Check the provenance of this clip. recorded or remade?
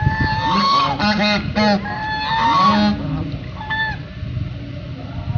recorded